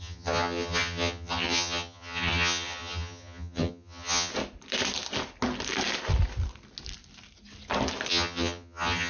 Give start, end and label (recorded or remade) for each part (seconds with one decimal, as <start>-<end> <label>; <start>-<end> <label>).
0.0-4.3 remade; 4.3-8.1 recorded; 8.1-9.1 remade